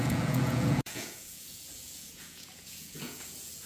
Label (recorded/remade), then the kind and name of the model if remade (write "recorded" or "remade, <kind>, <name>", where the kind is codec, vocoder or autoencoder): remade, vocoder, Vocos